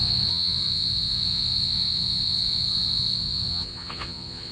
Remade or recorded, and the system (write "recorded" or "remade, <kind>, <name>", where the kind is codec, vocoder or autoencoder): remade, vocoder, Vocos